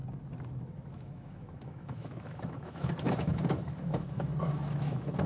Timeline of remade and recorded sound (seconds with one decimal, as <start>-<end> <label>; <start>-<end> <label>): 0.0-0.6 recorded; 0.6-5.3 remade